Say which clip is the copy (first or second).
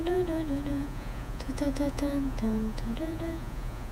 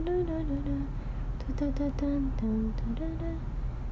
first